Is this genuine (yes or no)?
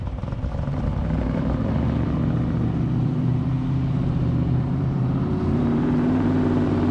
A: no